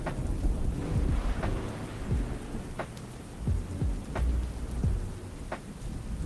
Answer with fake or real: real